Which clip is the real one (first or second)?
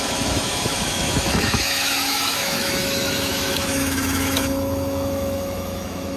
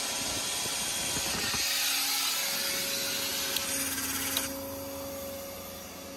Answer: second